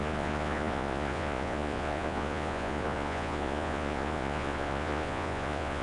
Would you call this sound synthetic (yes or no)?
yes